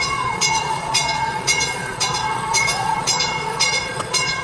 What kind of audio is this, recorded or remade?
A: remade